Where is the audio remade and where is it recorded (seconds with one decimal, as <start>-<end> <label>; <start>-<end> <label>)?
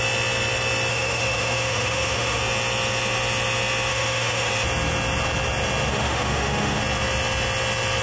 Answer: 0.0-0.9 recorded; 0.9-2.4 remade; 2.4-3.9 recorded; 3.9-4.5 remade; 4.5-5.9 recorded; 5.9-6.8 remade; 6.8-8.0 recorded